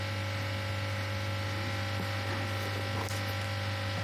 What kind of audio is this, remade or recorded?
recorded